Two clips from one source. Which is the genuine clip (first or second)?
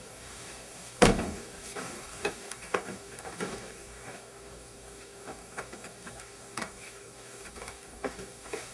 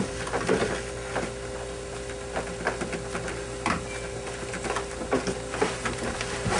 second